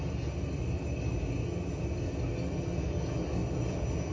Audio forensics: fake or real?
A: real